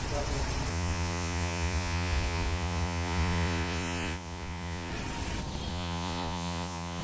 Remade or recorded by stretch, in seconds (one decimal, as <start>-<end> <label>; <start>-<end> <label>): 0.0-0.7 recorded; 0.7-4.9 remade; 4.9-5.7 recorded; 5.7-7.0 remade